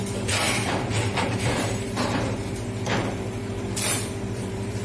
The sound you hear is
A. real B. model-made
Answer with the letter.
B